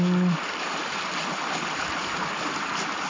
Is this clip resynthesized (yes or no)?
no